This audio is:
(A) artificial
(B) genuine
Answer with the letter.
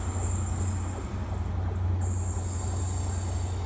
B